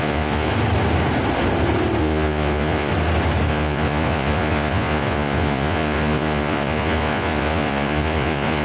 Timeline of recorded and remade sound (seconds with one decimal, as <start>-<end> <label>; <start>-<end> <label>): 0.0-0.5 remade; 0.5-2.0 recorded; 2.0-2.9 remade; 2.9-3.5 recorded; 3.5-8.6 remade